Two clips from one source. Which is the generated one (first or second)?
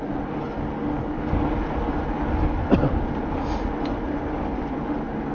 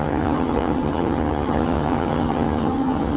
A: second